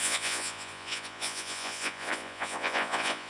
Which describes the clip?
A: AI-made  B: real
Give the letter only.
A